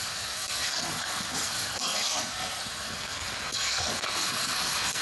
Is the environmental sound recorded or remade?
remade